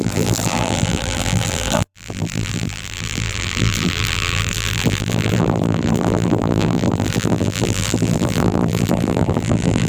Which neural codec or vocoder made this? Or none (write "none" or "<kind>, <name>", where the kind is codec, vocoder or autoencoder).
vocoder, BigVGAN v2